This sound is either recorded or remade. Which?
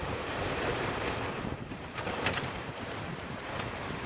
remade